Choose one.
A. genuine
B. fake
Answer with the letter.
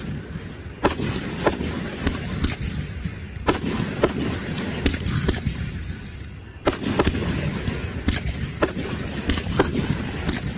A